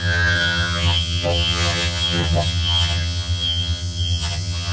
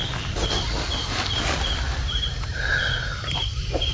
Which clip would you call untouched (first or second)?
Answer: second